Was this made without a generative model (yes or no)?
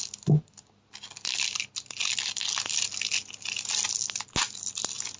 yes